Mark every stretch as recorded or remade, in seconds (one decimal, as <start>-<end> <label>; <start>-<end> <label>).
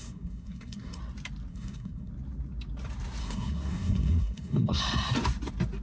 0.0-1.0 remade; 1.0-1.5 recorded; 1.5-2.1 remade; 2.1-3.2 recorded; 3.2-4.8 remade; 4.8-5.8 recorded